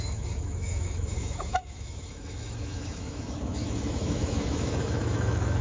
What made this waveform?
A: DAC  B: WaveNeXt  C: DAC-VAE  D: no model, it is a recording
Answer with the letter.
C